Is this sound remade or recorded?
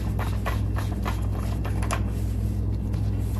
recorded